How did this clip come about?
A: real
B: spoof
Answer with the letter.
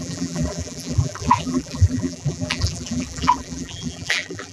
B